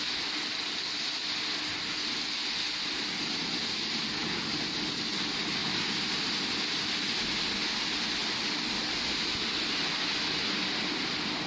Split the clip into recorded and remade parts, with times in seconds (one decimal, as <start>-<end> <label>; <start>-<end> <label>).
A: 0.0-2.4 recorded; 2.4-3.4 remade; 3.4-11.5 recorded